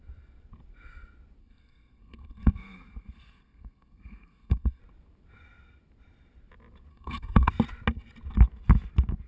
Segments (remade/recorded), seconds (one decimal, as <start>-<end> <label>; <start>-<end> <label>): 0.0-1.4 recorded; 1.4-4.8 remade; 4.8-6.9 recorded; 6.9-7.5 remade; 7.5-9.3 recorded